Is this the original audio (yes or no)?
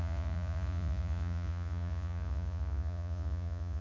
no